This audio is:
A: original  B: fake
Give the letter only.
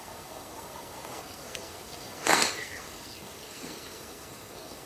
B